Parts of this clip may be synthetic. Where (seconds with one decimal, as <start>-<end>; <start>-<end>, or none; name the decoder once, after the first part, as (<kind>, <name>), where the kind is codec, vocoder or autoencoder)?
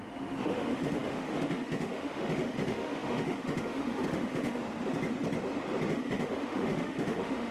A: 0.0-4.6 (autoencoder, DAC-VAE); 5.9-7.5